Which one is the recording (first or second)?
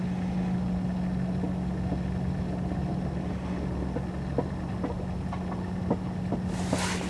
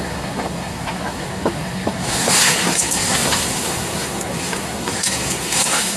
first